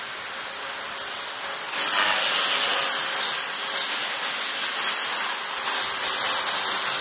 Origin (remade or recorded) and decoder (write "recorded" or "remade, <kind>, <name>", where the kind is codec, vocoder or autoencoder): recorded